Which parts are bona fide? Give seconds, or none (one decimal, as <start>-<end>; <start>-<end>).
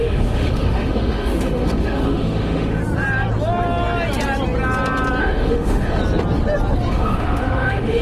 2.8-5.2; 6.0-6.9